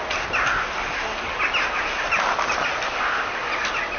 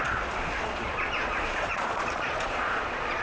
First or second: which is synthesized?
second